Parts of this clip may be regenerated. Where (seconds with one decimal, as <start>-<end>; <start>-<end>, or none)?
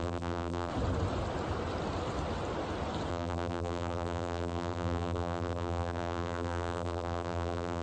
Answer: 0.0-0.7; 3.1-7.8